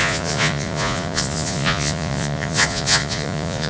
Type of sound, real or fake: fake